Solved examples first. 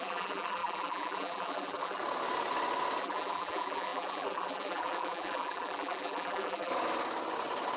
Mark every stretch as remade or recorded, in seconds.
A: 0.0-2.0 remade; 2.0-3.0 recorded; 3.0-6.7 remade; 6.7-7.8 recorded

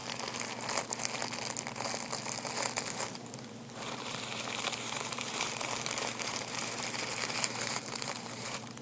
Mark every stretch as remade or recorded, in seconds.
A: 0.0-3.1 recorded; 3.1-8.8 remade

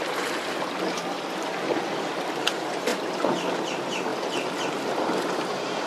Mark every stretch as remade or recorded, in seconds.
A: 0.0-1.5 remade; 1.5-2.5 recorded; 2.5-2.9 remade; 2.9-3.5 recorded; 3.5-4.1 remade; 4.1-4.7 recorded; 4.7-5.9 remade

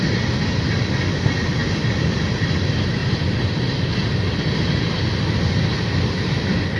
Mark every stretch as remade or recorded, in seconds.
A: 0.0-1.6 recorded; 1.6-2.5 remade; 2.5-3.0 recorded; 3.0-3.9 remade; 3.9-6.8 recorded

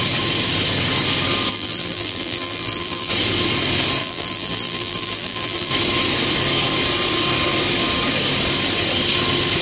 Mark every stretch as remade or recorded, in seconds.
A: 0.0-1.5 recorded; 1.5-3.1 remade; 3.1-4.0 recorded; 4.0-5.7 remade; 5.7-9.6 recorded